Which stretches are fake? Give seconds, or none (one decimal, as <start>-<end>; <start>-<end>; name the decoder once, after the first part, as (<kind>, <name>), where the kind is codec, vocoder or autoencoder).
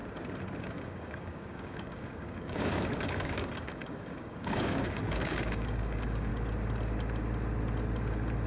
0.6-6.3 (codec, DAC)